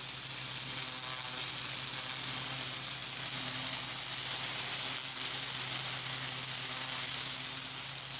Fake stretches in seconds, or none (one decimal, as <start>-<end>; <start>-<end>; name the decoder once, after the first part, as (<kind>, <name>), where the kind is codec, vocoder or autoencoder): none

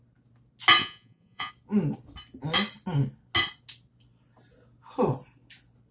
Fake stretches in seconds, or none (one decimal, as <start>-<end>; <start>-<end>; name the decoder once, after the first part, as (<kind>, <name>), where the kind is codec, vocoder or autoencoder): 0.8-1.5 (vocoder, Vocos)

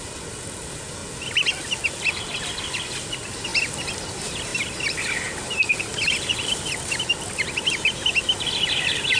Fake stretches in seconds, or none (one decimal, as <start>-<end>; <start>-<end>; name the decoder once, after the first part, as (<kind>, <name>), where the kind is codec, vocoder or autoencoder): none

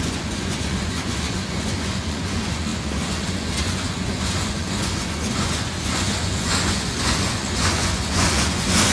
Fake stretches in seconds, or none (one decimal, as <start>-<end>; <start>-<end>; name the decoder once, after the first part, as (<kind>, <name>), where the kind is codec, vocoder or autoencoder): 0.0-8.9 (vocoder, Vocos)

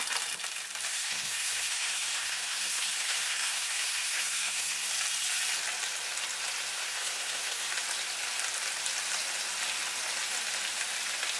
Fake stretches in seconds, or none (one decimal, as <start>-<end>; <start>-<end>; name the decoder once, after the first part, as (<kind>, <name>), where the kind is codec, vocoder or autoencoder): 0.9-4.9 (codec, SNAC); 6.8-7.7

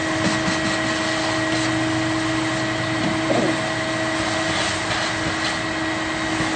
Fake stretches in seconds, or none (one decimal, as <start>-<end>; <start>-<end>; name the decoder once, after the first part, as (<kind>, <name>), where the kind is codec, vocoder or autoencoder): none

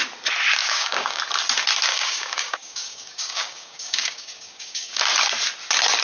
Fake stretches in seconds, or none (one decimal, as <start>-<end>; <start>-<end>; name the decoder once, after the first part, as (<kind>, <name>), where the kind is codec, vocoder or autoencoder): 0.6-1.2 (codec, DAC); 1.9-5.0

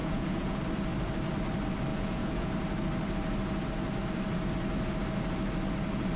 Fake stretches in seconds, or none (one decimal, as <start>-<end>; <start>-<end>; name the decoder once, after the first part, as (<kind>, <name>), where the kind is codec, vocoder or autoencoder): 0.0-0.6 (vocoder, Vocos); 1.9-2.5